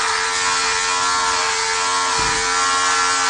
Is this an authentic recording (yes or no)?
yes